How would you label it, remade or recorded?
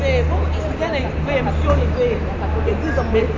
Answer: recorded